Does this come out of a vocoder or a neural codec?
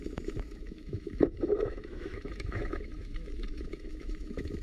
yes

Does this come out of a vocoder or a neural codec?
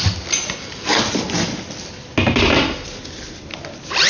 no